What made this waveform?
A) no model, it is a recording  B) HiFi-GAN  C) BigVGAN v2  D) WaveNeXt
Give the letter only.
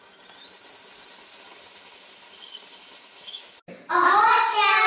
A